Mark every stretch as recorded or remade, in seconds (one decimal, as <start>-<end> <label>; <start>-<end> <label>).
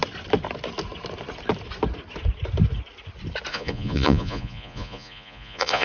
0.0-3.5 recorded; 3.5-5.8 remade